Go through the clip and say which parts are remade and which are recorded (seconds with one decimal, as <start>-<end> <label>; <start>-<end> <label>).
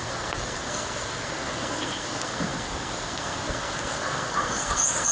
0.0-5.1 remade